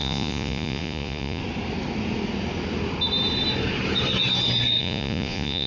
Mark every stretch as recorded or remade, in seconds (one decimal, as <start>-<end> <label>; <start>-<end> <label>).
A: 0.0-1.4 remade; 1.4-4.8 recorded; 4.8-5.7 remade